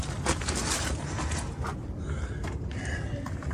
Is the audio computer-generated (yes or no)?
no